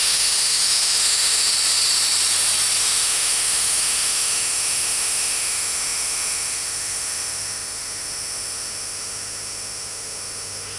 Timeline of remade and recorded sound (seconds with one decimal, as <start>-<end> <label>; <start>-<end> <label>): 0.0-1.5 remade; 1.5-2.8 recorded; 2.8-10.8 remade